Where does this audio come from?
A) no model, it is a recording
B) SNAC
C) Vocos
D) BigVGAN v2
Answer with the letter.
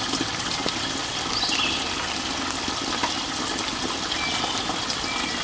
A